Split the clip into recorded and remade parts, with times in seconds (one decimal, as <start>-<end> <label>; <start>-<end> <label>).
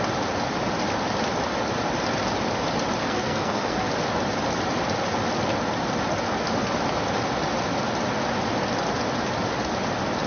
0.0-3.0 recorded; 3.0-3.9 remade; 3.9-10.3 recorded